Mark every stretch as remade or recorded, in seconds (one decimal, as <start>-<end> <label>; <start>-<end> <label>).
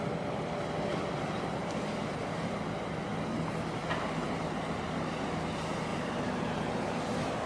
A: 0.0-0.9 recorded; 0.9-2.6 remade; 2.6-5.9 recorded; 5.9-7.0 remade; 7.0-7.5 recorded